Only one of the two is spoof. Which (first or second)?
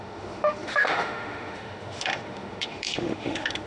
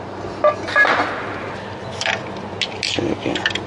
first